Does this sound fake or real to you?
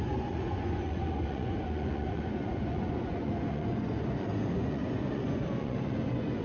fake